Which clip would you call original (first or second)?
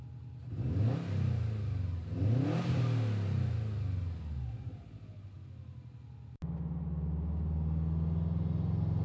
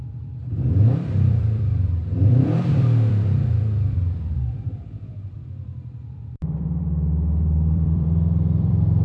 first